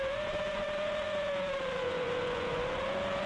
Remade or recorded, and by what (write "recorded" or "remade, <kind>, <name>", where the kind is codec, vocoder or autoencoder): remade, vocoder, Vocos